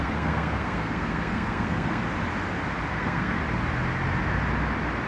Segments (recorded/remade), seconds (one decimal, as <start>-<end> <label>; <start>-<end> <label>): 0.0-2.0 remade; 2.0-2.9 recorded; 2.9-3.4 remade; 3.4-5.1 recorded